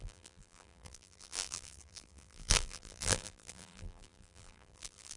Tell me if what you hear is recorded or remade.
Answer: remade